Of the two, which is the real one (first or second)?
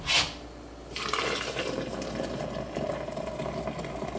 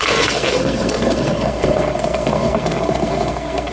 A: first